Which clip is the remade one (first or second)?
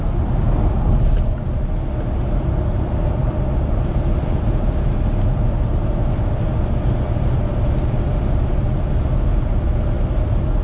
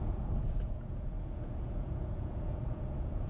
second